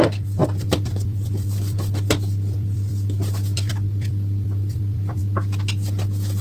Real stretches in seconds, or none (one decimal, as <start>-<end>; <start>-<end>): 5.2-6.4